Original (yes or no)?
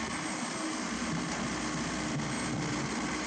yes